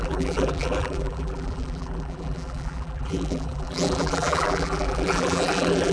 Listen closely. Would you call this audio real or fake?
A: fake